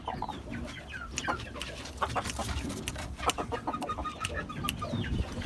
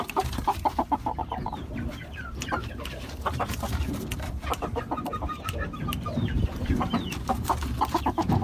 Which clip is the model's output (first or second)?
second